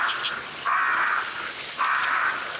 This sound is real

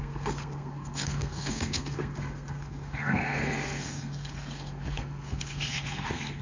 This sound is fake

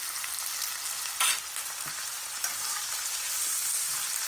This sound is real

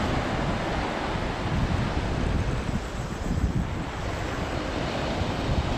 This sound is real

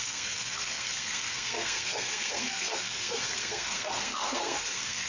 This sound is fake